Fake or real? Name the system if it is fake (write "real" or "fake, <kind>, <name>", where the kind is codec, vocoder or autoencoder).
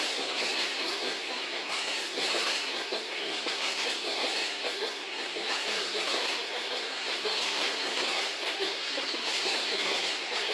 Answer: fake, codec, SNAC